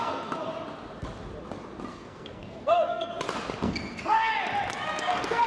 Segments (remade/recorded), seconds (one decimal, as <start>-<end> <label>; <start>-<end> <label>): 0.0-0.5 remade; 0.5-1.9 recorded; 1.9-3.1 remade; 3.1-3.6 recorded; 3.6-4.3 remade; 4.3-5.0 recorded; 5.0-5.5 remade